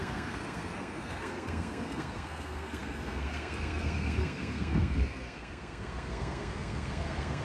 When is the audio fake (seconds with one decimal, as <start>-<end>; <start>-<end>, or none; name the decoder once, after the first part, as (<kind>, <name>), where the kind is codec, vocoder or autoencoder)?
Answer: 0.0-7.4 (codec, SNAC)